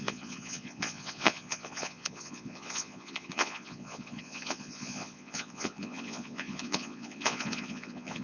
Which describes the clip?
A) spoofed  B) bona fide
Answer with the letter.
A